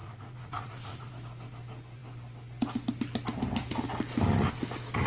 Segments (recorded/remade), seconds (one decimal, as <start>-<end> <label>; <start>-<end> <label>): 0.0-1.1 remade; 1.1-5.1 recorded